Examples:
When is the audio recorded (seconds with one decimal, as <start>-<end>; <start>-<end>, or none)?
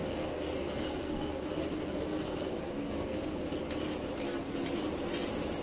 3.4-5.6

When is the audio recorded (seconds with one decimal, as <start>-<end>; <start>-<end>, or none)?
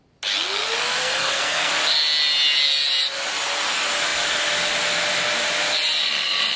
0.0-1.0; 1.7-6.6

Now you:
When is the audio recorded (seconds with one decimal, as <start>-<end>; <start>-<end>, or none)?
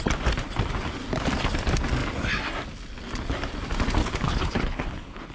0.0-4.0